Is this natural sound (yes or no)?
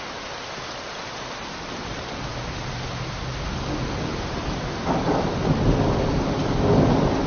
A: yes